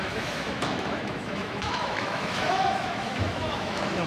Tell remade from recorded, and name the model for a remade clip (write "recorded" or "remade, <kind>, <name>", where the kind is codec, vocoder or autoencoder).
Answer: remade, autoencoder, DAC-VAE